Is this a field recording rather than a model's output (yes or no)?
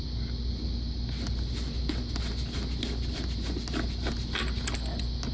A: yes